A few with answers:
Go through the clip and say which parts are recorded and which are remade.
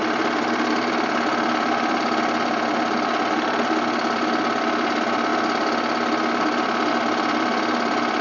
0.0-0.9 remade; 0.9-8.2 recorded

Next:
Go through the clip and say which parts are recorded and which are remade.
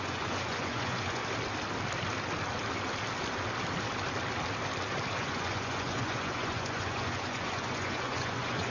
0.0-1.2 remade; 1.2-5.2 recorded; 5.2-8.7 remade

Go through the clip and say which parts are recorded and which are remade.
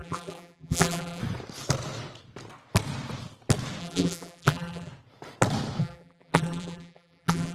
0.0-1.2 remade; 1.2-3.8 recorded; 3.8-4.9 remade; 4.9-5.8 recorded; 5.8-7.5 remade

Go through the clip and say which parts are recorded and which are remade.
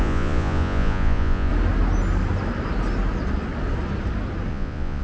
0.0-1.5 remade; 1.5-4.5 recorded; 4.5-5.0 remade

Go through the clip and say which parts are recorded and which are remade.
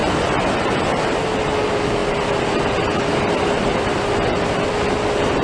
0.0-5.4 recorded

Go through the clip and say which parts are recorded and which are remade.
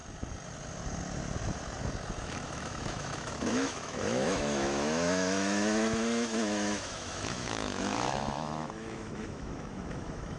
0.0-2.2 recorded; 2.2-10.4 remade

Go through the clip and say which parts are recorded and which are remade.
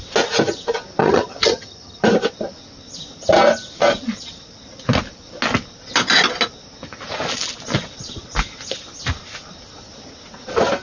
0.0-1.0 recorded; 1.0-2.0 remade; 2.0-10.8 recorded